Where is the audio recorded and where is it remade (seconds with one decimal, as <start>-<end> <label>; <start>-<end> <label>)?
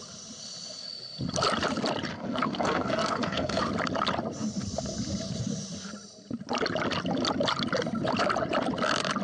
0.0-2.1 recorded; 2.1-3.6 remade; 3.6-9.2 recorded